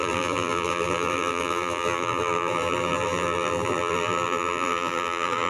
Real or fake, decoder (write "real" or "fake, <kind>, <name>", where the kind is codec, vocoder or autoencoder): fake, vocoder, BigVGAN v2